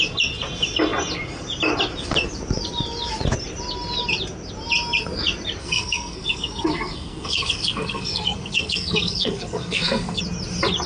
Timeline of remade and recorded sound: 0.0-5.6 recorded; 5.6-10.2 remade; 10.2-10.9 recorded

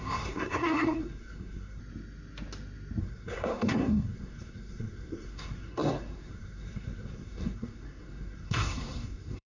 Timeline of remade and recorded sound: 0.0-1.8 remade; 1.8-3.0 recorded; 3.0-9.5 remade

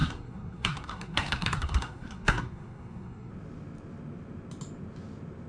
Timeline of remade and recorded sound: 0.0-3.3 remade; 3.3-5.5 recorded

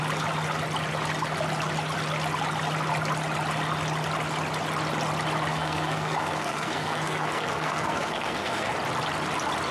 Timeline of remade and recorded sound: 0.0-5.5 recorded; 5.5-8.7 remade; 8.7-9.7 recorded

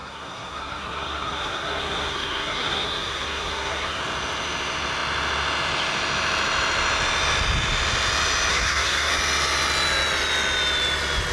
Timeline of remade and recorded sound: 0.0-4.0 remade; 4.0-8.5 recorded; 8.5-9.1 remade; 9.1-11.3 recorded

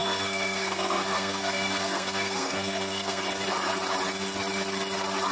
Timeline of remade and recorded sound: 0.0-3.2 remade; 3.2-5.3 recorded

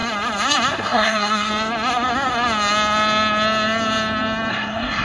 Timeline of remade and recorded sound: 0.0-0.7 recorded; 0.7-1.5 remade; 1.5-4.5 recorded; 4.5-5.0 remade